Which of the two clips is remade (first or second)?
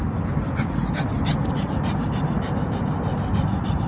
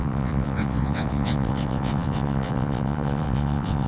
second